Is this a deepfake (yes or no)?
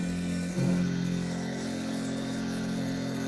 yes